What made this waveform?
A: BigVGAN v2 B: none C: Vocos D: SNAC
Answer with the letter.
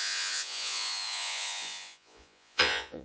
C